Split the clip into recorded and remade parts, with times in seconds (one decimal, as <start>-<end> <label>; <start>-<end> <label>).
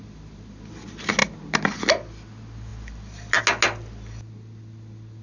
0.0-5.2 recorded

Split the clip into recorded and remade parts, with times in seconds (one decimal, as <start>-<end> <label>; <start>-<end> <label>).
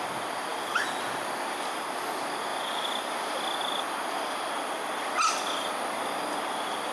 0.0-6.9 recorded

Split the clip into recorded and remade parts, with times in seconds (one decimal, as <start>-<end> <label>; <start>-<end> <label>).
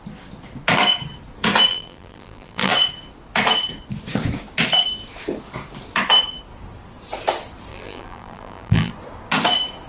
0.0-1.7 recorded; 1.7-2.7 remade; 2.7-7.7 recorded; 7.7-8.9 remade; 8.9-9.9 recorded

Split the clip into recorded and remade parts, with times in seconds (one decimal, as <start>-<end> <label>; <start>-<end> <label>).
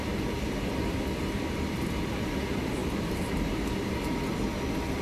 0.0-2.8 recorded; 2.8-4.0 remade; 4.0-5.0 recorded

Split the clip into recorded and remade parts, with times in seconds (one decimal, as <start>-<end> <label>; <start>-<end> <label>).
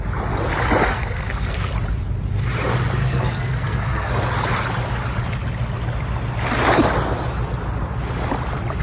0.0-0.9 recorded; 0.9-1.7 remade; 1.7-3.0 recorded; 3.0-4.1 remade; 4.1-8.8 recorded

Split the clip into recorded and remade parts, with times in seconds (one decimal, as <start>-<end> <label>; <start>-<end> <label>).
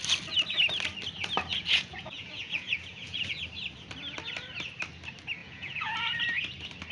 0.0-1.5 recorded; 1.5-3.4 remade; 3.4-5.4 recorded; 5.4-6.2 remade; 6.2-6.9 recorded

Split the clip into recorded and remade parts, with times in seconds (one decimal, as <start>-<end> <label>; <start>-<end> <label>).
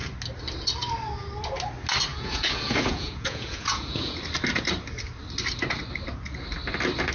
0.0-2.1 recorded; 2.1-4.2 remade; 4.2-7.1 recorded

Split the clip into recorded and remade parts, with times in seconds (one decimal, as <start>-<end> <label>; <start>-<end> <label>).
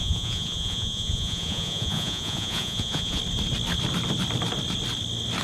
0.0-3.2 remade; 3.2-5.4 recorded